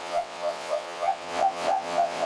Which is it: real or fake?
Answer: fake